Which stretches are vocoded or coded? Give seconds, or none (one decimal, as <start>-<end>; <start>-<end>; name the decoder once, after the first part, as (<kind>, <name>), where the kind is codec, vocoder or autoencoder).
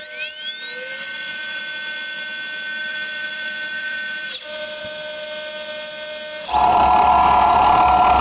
0.9-1.6 (vocoder, BigVGAN v2); 2.8-4.8